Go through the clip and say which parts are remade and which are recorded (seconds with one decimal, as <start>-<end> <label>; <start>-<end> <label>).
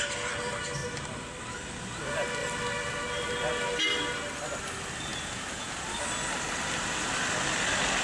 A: 0.0-5.1 recorded; 5.1-5.8 remade; 5.8-8.0 recorded